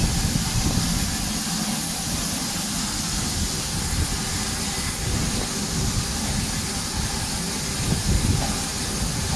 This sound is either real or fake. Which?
real